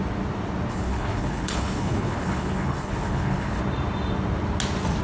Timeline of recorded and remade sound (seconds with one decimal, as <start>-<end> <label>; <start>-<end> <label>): 0.0-0.7 recorded; 0.7-3.6 remade; 3.6-5.0 recorded